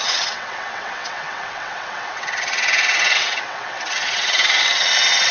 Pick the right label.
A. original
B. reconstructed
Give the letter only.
B